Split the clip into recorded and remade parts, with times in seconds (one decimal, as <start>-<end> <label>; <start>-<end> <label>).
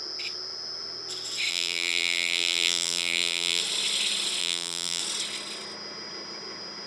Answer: 0.0-1.5 recorded; 1.5-3.6 remade; 3.6-4.4 recorded; 4.4-5.0 remade; 5.0-6.9 recorded